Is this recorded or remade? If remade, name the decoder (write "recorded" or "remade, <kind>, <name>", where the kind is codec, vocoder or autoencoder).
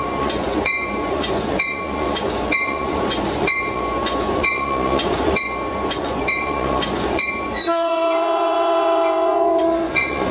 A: remade, vocoder, Vocos